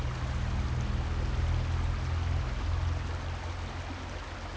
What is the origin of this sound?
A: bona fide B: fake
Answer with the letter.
A